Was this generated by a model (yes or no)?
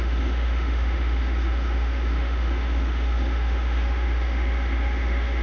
yes